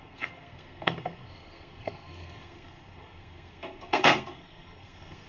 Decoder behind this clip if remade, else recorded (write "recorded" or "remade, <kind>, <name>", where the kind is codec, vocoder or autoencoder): remade, codec, SNAC